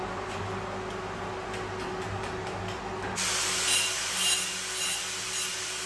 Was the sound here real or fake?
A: real